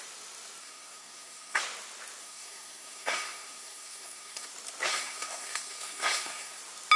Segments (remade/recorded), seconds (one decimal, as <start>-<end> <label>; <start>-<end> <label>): 0.0-0.6 recorded; 0.6-1.6 remade; 1.6-2.2 recorded; 2.2-4.5 remade; 4.5-4.9 recorded; 4.9-6.6 remade; 6.6-7.0 recorded